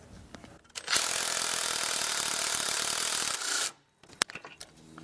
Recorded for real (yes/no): yes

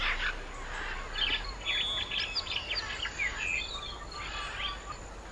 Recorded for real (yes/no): yes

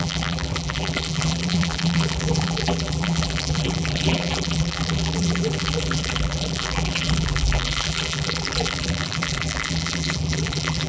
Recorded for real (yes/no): no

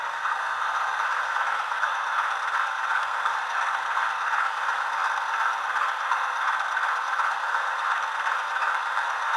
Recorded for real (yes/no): no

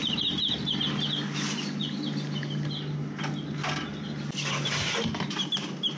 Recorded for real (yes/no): yes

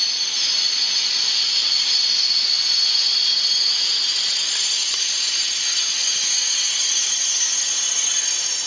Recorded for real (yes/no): yes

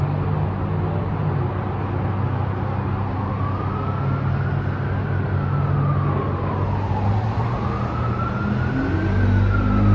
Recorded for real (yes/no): yes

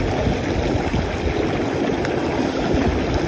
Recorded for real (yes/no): yes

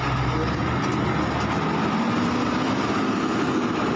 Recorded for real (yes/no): yes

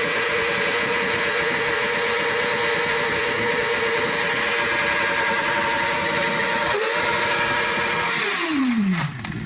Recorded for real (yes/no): no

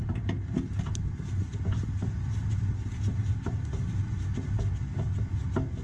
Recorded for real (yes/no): yes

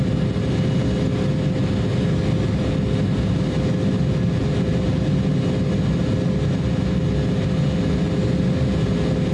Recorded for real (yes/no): yes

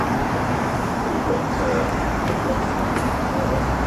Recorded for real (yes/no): yes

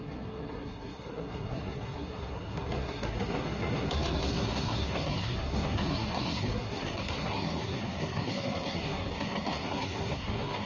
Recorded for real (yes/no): no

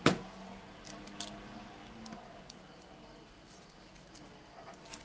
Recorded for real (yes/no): yes